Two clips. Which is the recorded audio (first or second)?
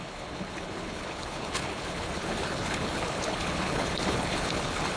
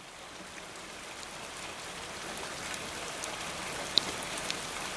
second